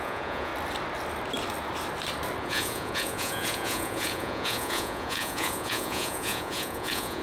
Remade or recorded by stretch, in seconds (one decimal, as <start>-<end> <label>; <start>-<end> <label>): 0.0-0.5 remade; 0.5-2.4 recorded; 2.4-7.2 remade